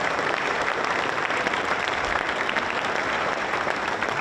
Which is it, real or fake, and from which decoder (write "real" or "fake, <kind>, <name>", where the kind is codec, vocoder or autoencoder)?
fake, vocoder, BigVGAN v2